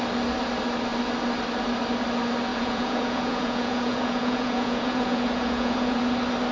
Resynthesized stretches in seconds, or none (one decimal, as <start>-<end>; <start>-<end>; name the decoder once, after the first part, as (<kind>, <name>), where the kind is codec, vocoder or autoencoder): 2.5-6.0 (vocoder, Vocos)